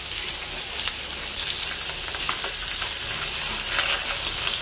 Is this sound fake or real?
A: real